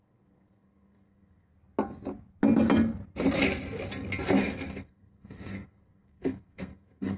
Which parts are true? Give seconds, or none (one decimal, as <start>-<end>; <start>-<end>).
1.5-4.4